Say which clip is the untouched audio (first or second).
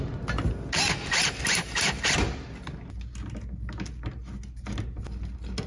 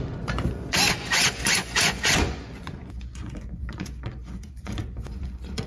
first